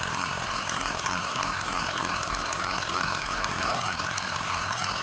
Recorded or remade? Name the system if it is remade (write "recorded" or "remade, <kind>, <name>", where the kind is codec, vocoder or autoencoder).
remade, codec, SNAC